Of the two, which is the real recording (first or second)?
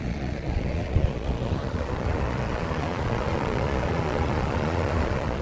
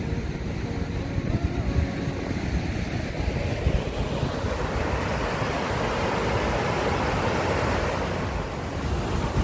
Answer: second